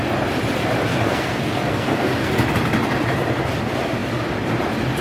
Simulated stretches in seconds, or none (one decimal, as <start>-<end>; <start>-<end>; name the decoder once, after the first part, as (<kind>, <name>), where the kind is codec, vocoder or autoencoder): 0.9-2.3 (codec, SNAC)